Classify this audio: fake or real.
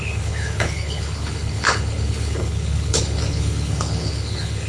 fake